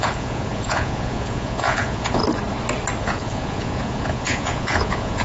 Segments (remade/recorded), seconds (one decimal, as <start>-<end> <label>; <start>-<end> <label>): 0.0-2.2 remade; 2.2-3.0 recorded; 3.0-5.2 remade